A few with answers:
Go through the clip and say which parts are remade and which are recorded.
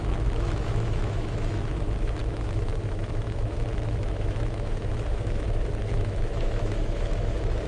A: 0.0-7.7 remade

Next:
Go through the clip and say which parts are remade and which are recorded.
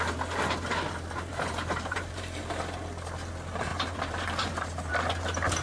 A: 0.0-1.3 recorded; 1.3-2.6 remade; 2.6-3.7 recorded; 3.7-4.9 remade; 4.9-5.6 recorded